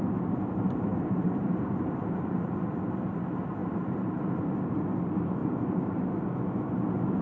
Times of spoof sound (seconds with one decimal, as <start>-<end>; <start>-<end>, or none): 0.9-2.5; 3.6-4.2; 5.4-6.0